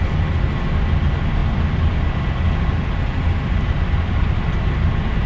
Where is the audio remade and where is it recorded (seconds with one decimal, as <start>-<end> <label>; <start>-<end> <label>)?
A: 0.0-5.3 recorded